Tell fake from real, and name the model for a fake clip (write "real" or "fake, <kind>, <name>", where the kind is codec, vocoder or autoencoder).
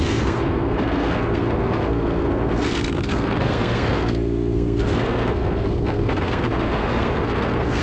fake, codec, SNAC